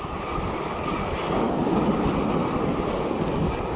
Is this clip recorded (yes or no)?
yes